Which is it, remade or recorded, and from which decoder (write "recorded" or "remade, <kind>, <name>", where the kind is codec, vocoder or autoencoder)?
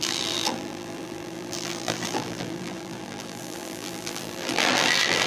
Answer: remade, vocoder, BigVGAN v2